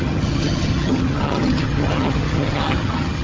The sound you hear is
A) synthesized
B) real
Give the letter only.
A